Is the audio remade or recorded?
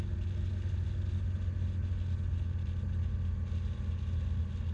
recorded